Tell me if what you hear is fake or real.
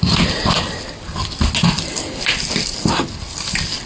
real